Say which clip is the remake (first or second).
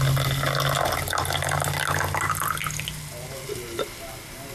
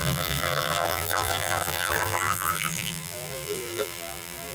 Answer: second